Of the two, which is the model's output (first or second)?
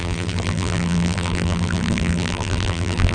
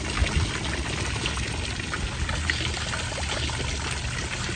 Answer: first